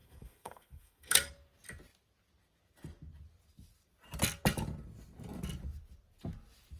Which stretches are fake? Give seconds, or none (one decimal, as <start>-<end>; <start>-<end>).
0.0-1.3